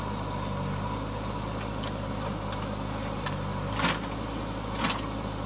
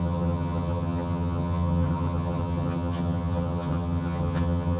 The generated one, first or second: second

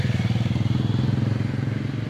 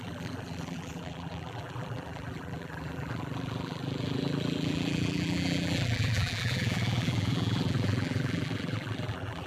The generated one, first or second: second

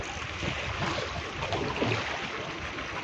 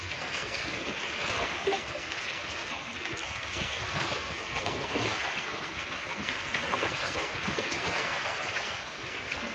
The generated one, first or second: second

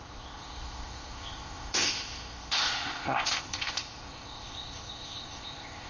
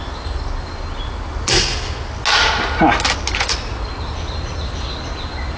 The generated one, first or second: first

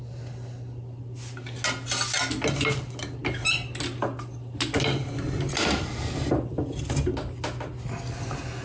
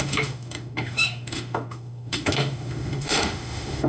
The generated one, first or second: second